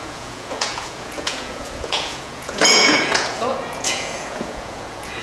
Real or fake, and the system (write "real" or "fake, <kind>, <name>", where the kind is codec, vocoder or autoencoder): fake, vocoder, Vocos